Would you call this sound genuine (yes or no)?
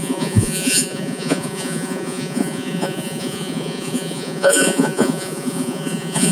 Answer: no